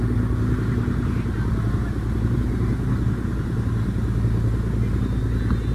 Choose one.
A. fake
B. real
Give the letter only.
B